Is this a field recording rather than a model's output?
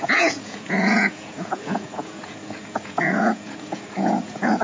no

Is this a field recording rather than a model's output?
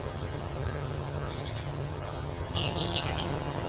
no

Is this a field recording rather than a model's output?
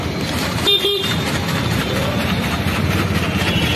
no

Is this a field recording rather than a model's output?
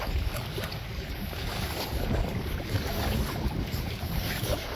no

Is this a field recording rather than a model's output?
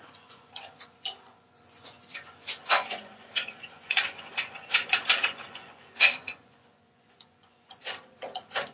no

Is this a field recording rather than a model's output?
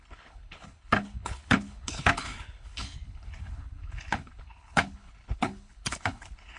no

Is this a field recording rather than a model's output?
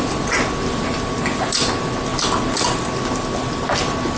yes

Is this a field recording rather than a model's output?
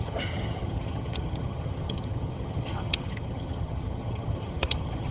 no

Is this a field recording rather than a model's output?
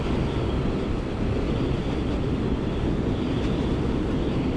yes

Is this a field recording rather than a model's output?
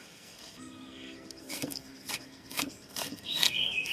no